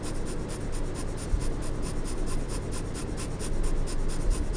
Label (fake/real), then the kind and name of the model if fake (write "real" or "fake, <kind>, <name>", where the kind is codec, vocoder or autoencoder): real